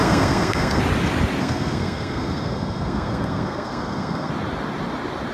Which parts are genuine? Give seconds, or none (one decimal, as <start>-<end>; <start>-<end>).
0.8-1.4; 4.3-5.3